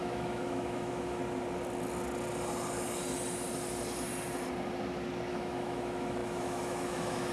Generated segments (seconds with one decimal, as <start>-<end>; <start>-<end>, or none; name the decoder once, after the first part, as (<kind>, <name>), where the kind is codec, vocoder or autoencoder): 0.0-1.2 (autoencoder, DAC-VAE); 5.3-7.3